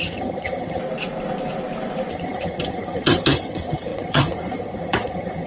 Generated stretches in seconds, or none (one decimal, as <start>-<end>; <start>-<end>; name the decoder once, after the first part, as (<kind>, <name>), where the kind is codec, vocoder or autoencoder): 0.0-0.8 (vocoder, HiFi-GAN); 2.1-5.5